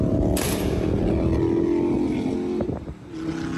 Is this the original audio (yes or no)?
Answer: yes